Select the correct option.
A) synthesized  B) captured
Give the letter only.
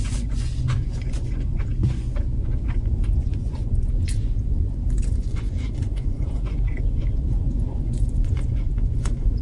A